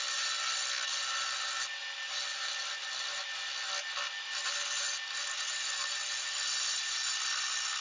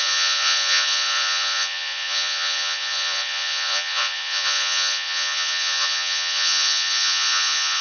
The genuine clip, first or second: first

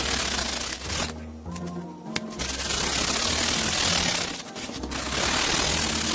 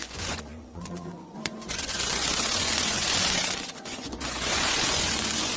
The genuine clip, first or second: first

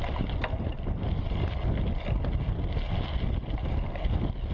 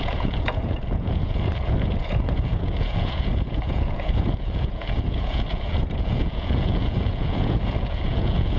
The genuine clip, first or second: first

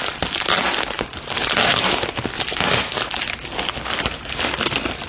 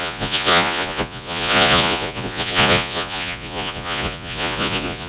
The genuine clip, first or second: first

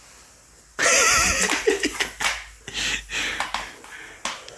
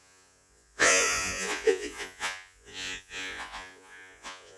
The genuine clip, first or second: first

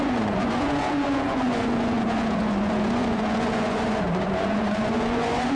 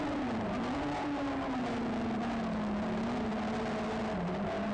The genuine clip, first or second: second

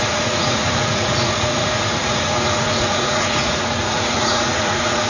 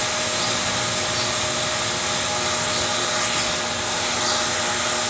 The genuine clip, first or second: second